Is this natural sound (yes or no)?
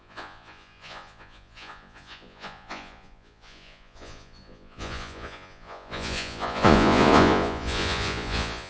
no